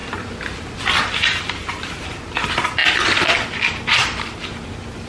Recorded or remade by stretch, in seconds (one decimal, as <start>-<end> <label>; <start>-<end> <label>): 0.0-5.1 recorded